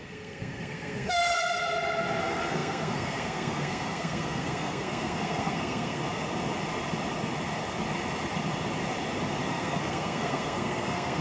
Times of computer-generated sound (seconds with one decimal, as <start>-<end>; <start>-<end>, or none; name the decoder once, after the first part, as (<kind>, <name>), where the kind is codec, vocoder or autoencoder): 0.0-1.2 (codec, SNAC); 2.2-6.0; 9.5-11.2